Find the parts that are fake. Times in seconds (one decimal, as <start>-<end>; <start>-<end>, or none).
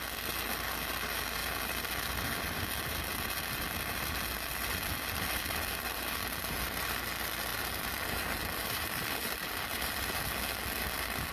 1.4-2.8; 7.5-10.3